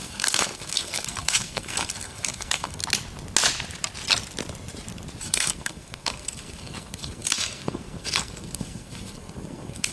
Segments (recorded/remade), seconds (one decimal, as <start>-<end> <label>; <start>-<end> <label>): 0.0-2.8 remade; 2.8-5.2 recorded; 5.2-9.9 remade